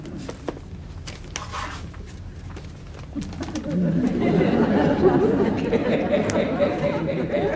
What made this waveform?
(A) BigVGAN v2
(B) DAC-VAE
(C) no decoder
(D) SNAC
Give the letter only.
C